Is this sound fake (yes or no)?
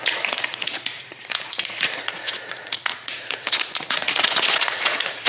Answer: yes